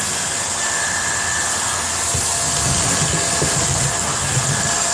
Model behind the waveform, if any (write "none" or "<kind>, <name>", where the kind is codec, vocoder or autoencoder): none